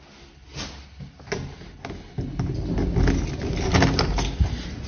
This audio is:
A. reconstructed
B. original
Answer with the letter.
B